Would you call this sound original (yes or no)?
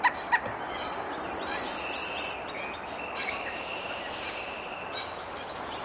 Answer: yes